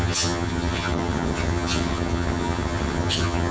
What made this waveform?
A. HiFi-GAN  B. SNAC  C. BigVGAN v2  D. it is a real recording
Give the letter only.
A